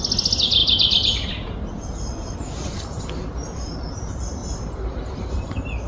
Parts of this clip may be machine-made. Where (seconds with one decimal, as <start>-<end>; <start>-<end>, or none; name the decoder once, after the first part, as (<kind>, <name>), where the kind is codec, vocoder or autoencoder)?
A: 4.4-5.4 (vocoder, BigVGAN v2)